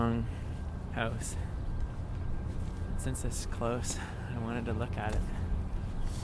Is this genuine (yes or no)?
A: yes